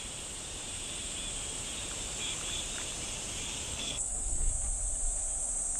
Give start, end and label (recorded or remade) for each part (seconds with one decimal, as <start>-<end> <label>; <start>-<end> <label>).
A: 0.0-3.7 recorded; 3.7-4.5 remade; 4.5-5.8 recorded

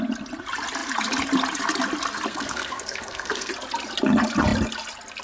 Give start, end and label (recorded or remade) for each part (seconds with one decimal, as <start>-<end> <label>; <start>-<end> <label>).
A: 0.0-2.3 recorded; 2.3-3.5 remade; 3.5-5.2 recorded

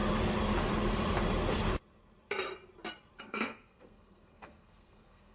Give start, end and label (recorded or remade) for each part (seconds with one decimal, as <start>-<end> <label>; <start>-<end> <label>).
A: 0.0-3.2 recorded; 3.2-5.3 remade

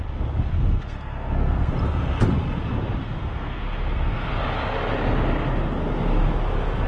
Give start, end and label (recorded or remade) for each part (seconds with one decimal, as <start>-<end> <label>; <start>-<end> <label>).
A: 0.0-0.5 recorded; 0.5-1.7 remade; 1.7-3.0 recorded; 3.0-4.3 remade; 4.3-6.9 recorded

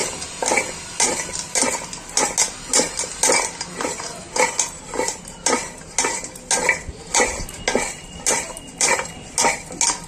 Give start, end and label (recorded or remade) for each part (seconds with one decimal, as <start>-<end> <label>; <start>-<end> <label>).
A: 0.0-10.1 recorded

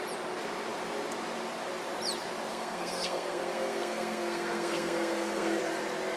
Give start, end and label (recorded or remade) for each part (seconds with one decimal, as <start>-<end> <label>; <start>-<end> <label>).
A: 0.0-2.5 recorded; 2.5-5.6 remade; 5.6-6.2 recorded

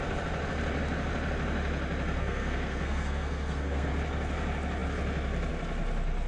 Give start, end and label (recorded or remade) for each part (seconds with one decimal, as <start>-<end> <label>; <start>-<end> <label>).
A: 0.0-2.2 recorded; 2.2-3.9 remade; 3.9-6.3 recorded

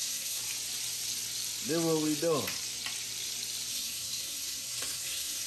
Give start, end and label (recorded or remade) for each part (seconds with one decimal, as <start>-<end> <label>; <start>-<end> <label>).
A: 0.0-0.4 remade; 0.4-3.7 recorded; 3.7-5.5 remade